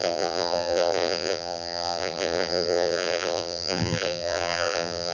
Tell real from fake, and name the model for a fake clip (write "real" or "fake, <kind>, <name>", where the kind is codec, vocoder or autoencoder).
fake, vocoder, BigVGAN v2